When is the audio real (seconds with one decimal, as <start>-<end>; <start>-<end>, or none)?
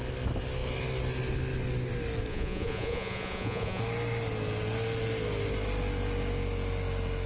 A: 0.0-2.3; 3.8-7.3